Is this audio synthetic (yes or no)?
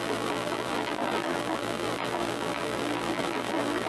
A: yes